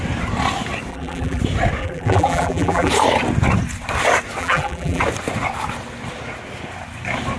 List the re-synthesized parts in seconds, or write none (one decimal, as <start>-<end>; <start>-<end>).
0.9-1.4; 1.8-2.9; 4.4-5.0